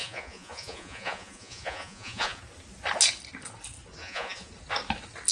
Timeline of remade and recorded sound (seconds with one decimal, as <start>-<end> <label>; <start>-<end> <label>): 0.0-2.4 remade; 2.4-4.0 recorded; 4.0-4.5 remade; 4.5-5.3 recorded